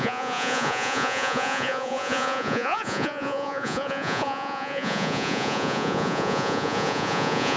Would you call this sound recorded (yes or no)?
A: no